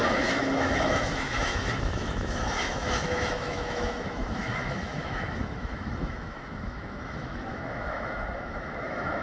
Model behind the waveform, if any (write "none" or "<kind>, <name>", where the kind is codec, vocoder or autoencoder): autoencoder, DAC-VAE